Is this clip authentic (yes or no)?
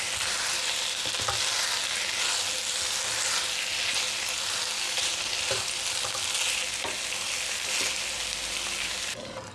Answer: yes